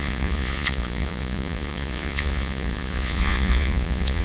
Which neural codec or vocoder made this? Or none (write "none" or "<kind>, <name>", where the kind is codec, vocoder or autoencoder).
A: vocoder, Vocos